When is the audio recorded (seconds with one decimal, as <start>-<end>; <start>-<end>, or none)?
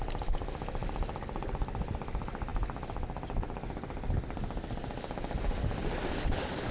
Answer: 0.0-6.7